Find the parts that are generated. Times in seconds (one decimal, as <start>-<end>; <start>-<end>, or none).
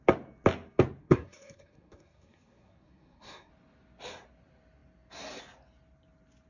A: 1.0-3.5